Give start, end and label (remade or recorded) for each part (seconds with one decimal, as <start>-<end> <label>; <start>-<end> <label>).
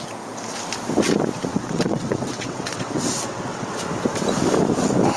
0.0-1.5 recorded; 1.5-3.8 remade; 3.8-5.2 recorded